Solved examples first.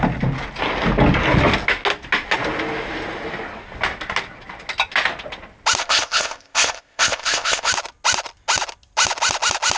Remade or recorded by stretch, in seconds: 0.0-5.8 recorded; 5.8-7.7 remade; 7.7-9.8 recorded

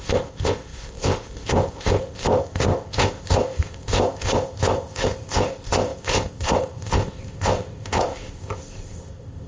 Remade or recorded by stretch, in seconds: 0.0-9.5 remade